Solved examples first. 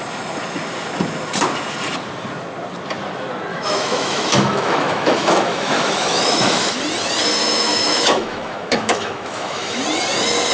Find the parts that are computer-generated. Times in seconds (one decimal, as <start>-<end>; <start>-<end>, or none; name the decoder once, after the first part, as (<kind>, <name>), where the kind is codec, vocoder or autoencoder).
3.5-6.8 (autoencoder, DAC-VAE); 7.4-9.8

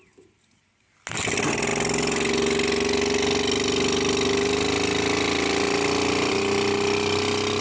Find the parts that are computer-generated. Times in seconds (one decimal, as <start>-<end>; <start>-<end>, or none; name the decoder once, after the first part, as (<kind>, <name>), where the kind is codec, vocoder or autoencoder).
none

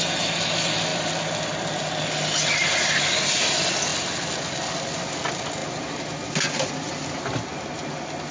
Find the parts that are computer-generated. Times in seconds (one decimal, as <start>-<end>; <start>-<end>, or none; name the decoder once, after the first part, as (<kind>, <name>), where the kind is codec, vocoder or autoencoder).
0.9-1.7 (vocoder, BigVGAN v2)

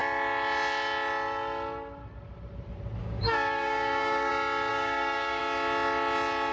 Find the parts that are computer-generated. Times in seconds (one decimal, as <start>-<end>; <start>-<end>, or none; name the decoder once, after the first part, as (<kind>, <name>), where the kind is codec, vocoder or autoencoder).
3.0-4.3 (codec, DAC); 4.7-5.4

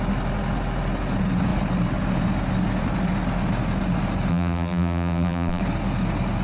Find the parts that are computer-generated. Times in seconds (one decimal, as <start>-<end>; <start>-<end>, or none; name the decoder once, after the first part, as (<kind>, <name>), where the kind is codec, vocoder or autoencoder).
4.3-5.6 (vocoder, BigVGAN v2)

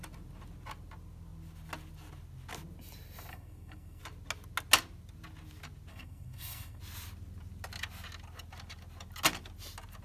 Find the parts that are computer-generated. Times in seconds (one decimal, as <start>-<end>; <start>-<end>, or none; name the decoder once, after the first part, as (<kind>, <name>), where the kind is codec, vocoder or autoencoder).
3.3-4.0 (codec, SNAC); 5.9-6.8

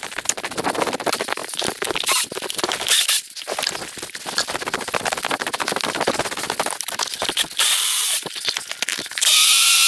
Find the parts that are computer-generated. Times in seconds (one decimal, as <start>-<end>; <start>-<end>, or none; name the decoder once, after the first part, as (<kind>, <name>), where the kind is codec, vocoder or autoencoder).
1.4-1.9 (vocoder, BigVGAN v2)

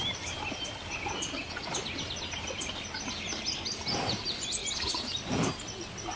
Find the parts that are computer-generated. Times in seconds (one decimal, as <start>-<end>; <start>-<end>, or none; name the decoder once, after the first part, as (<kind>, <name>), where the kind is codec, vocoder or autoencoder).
none